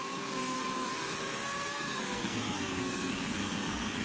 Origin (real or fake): fake